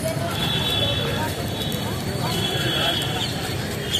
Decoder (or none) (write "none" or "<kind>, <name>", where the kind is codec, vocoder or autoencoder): none